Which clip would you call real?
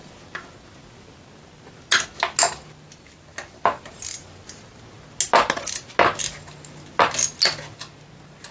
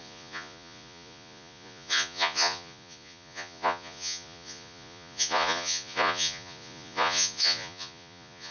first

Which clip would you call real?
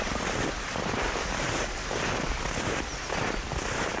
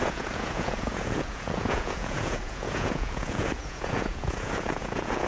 first